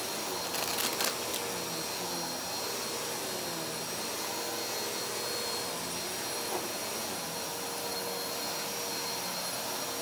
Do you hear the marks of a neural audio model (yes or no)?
no